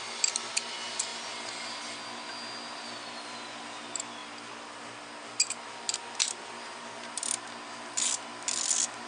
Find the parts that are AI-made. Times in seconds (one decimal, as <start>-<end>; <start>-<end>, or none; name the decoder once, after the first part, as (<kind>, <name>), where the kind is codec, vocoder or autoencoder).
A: none

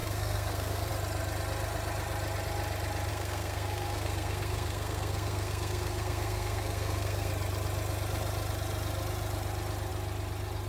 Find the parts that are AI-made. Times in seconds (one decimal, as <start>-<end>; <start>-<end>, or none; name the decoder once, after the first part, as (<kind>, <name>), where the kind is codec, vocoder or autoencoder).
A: 0.0-0.9 (codec, SNAC); 3.1-7.3

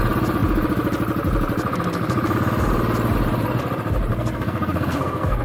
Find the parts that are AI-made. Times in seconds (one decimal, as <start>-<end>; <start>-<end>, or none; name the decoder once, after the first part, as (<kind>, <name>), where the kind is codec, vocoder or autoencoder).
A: 4.1-5.4 (codec, SNAC)

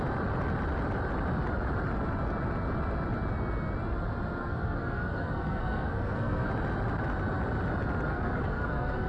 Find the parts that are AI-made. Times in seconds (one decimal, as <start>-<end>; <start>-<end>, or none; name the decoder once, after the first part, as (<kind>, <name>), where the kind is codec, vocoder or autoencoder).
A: 4.4-6.5 (codec, SNAC); 8.1-9.1